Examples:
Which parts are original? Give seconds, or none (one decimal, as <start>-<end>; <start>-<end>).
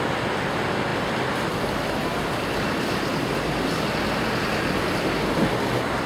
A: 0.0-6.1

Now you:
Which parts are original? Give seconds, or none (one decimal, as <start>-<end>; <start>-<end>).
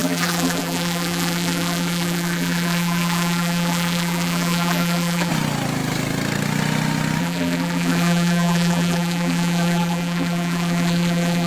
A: 5.3-7.2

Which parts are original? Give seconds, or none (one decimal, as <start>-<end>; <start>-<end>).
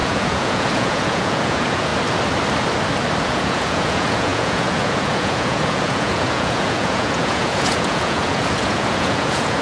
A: 1.9-3.2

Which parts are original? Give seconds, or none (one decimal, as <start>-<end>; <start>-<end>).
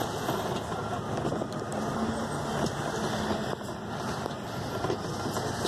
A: 0.0-5.7